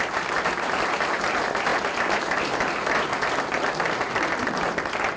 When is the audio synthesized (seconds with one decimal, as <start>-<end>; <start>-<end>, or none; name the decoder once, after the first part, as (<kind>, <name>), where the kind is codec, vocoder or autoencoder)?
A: none